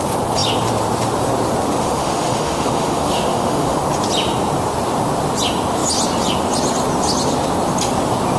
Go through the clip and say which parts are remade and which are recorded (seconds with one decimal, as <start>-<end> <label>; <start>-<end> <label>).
0.0-1.8 recorded; 1.8-3.8 remade; 3.8-8.4 recorded